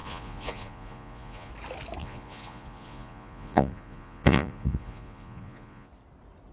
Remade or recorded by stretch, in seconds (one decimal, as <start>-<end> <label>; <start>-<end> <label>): 0.0-1.5 remade; 1.5-2.0 recorded; 2.0-5.9 remade; 5.9-6.5 recorded